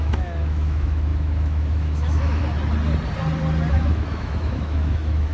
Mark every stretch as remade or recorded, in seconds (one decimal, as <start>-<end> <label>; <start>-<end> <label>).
0.0-2.4 remade; 2.4-3.7 recorded; 3.7-5.3 remade